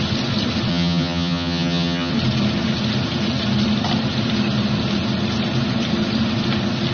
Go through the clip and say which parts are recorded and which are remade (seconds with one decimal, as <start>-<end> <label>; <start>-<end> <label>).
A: 0.0-0.7 recorded; 0.7-2.1 remade; 2.1-6.9 recorded